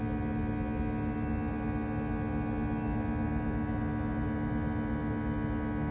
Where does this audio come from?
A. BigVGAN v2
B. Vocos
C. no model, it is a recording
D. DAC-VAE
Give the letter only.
C